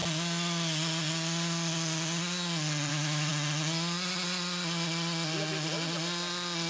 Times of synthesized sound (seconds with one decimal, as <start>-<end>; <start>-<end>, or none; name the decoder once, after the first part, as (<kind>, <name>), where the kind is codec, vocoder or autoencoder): 2.9-3.3 (autoencoder, DAC-VAE)

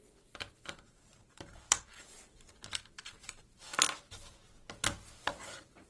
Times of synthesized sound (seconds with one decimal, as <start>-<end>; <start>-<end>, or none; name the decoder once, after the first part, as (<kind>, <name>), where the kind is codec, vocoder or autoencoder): 0.0-3.7 (vocoder, BigVGAN v2); 5.3-5.9

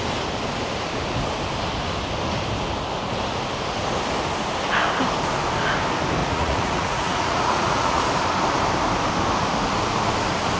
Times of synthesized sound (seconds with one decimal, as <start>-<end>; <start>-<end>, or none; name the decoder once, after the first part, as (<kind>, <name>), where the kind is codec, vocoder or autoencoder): 6.2-8.0 (vocoder, Vocos)

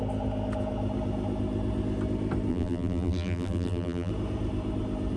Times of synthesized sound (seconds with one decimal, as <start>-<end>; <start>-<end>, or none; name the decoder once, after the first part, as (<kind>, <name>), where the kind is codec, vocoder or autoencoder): 2.5-4.1 (vocoder, BigVGAN v2)

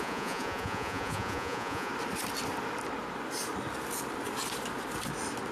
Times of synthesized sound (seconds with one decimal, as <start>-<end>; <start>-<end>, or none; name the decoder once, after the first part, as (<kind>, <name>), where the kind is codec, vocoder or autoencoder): 0.0-1.9 (vocoder, Vocos)

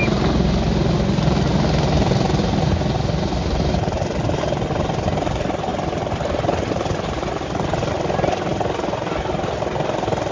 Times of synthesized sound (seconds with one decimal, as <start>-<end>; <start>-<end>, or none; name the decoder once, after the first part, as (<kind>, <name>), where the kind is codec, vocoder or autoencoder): none

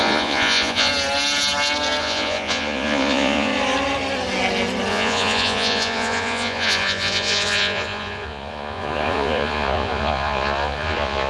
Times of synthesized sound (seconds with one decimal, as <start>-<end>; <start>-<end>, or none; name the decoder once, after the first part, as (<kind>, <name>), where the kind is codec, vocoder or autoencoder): 0.0-0.9 (vocoder, Vocos); 2.0-3.5; 4.9-11.3